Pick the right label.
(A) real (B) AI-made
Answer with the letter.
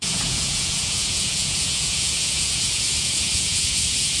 B